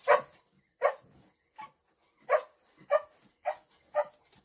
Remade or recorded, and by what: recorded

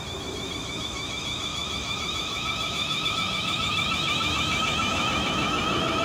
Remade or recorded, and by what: remade, autoencoder, DAC-VAE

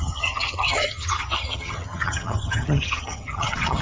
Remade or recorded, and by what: remade, vocoder, HiFi-GAN